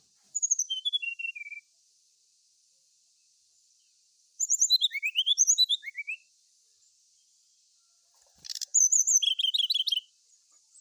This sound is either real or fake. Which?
fake